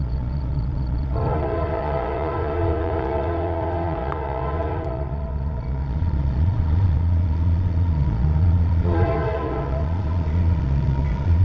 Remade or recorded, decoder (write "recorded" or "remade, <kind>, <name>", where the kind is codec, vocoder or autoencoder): remade, vocoder, Vocos